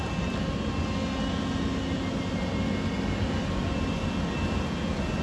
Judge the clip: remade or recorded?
recorded